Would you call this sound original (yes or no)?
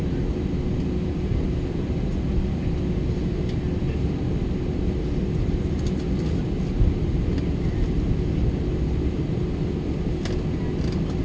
yes